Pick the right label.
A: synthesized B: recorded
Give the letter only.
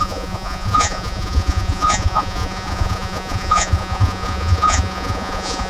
A